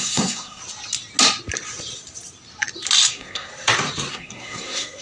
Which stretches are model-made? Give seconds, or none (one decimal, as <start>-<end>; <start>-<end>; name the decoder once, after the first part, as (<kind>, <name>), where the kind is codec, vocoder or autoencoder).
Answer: 0.0-0.6 (codec, SNAC); 3.1-3.5; 4.1-5.0

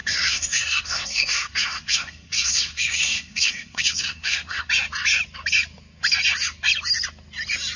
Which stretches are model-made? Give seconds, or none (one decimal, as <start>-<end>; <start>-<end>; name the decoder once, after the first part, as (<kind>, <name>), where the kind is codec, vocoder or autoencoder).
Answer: 0.0-4.7 (codec, SNAC)

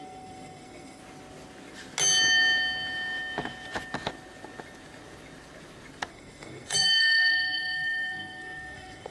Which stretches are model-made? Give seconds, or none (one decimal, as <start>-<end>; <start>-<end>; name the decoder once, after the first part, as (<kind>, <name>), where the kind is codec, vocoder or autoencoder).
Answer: 0.0-1.0 (codec, SNAC); 6.1-9.1